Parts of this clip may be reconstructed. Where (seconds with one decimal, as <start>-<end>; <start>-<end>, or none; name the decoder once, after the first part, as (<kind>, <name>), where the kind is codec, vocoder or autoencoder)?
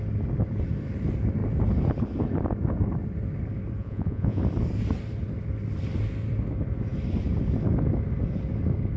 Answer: 3.8-4.4 (vocoder, Vocos)